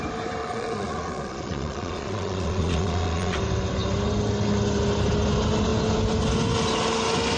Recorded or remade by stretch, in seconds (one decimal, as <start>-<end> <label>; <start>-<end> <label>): 0.0-0.4 recorded; 0.4-3.4 remade; 3.4-7.4 recorded